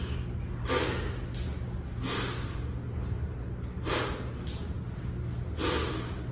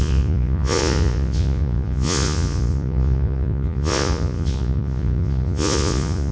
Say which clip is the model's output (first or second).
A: second